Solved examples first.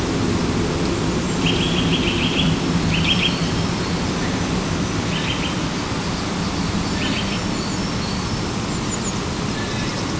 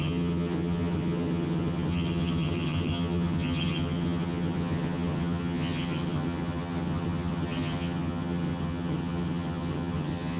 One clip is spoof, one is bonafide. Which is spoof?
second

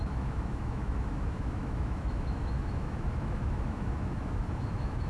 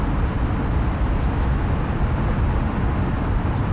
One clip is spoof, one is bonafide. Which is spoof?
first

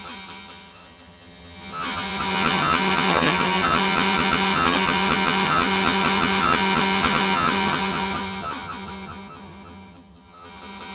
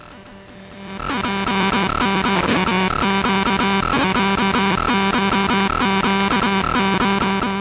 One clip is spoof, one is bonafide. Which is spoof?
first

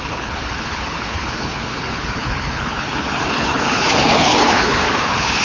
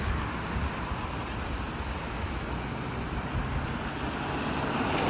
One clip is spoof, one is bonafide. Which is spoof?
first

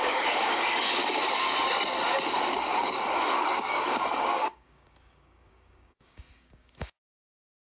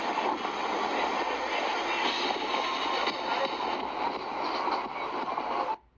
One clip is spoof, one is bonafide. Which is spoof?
first